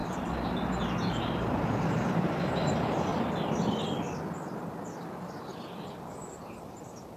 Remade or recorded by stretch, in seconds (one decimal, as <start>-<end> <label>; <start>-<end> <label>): 0.0-0.9 recorded; 0.9-3.1 remade; 3.1-5.9 recorded; 5.9-7.2 remade